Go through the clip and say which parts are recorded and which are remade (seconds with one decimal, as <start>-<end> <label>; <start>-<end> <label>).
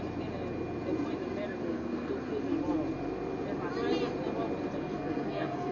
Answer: 0.0-1.6 recorded; 1.6-2.1 remade; 2.1-4.8 recorded; 4.8-5.7 remade